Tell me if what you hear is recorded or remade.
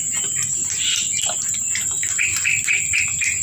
remade